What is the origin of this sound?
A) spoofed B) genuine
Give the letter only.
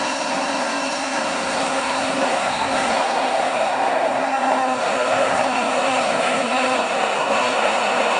A